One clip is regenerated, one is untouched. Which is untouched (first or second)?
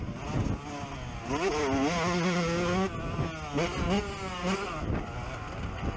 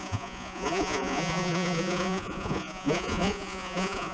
first